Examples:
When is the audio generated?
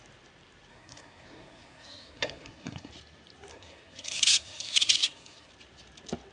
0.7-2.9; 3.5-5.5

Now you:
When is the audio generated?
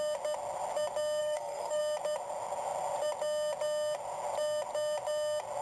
1.2-1.8